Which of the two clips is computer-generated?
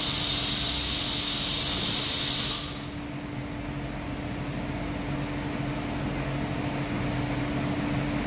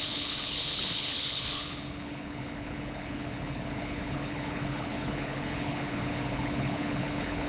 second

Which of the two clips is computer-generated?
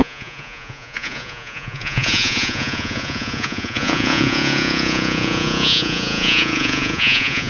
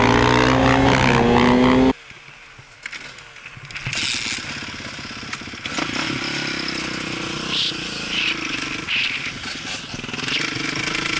first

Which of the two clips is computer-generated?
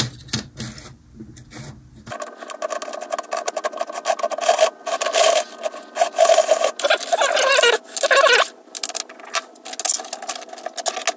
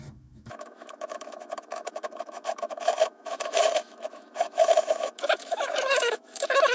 second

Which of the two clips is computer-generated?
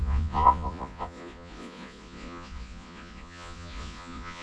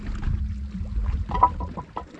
first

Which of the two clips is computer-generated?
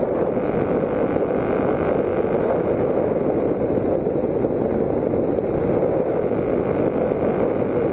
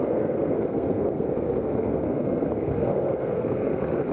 second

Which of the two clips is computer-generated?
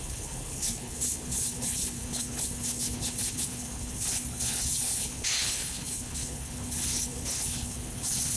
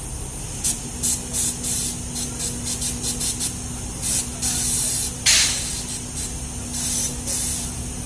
first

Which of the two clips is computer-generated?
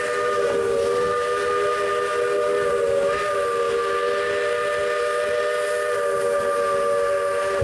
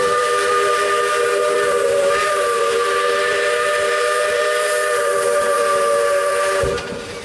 second